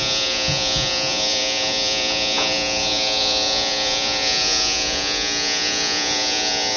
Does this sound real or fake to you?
fake